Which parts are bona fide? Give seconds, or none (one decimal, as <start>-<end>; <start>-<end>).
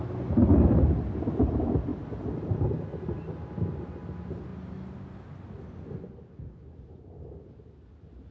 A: 0.0-8.3